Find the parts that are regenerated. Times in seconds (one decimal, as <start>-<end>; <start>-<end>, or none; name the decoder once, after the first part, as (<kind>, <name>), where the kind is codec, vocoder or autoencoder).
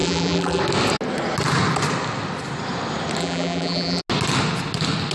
0.0-0.6 (vocoder, BigVGAN v2); 3.2-4.0